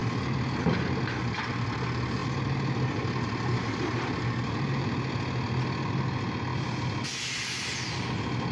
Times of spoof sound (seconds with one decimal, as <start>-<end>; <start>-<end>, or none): none